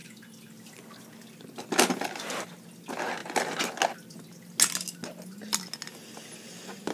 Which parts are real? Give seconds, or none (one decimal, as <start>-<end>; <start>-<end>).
0.0-6.9